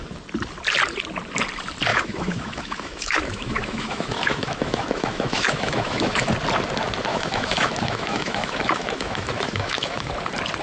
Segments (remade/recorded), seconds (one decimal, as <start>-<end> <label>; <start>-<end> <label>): 0.0-1.9 recorded; 1.9-6.3 remade; 6.3-7.1 recorded; 7.1-10.1 remade; 10.1-10.6 recorded